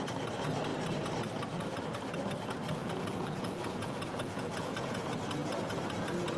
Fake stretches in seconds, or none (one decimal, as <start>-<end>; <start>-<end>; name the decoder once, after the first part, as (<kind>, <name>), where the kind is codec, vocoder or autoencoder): 2.8-5.0 (vocoder, Vocos)